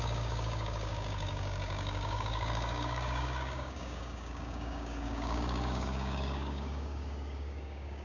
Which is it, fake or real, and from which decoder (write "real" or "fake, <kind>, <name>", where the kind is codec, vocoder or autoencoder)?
fake, codec, DAC